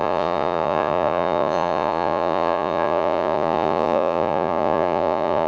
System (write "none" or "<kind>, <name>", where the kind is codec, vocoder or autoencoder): vocoder, Vocos